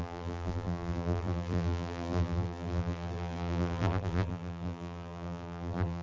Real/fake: fake